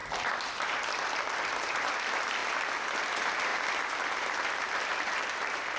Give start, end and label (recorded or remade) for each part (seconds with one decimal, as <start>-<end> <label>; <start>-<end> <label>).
0.0-0.5 remade; 0.5-2.4 recorded; 2.4-3.1 remade; 3.1-3.5 recorded; 3.5-5.1 remade; 5.1-5.8 recorded